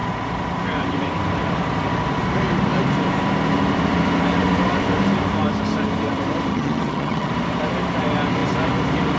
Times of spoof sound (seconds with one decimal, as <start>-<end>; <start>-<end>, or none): 6.5-7.3